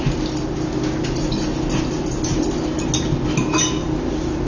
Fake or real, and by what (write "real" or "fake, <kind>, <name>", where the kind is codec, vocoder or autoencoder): real